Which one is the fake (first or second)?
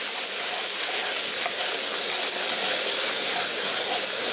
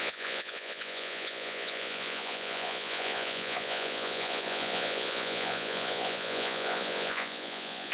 second